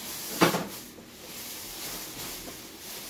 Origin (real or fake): real